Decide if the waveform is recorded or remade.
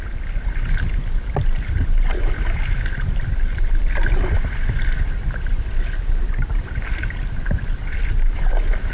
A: remade